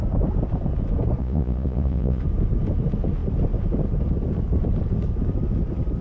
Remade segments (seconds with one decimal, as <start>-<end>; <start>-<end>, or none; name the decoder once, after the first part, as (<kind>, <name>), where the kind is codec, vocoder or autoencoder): 1.2-2.2 (vocoder, Vocos)